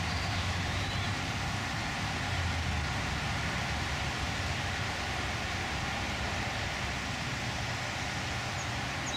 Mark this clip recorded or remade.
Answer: recorded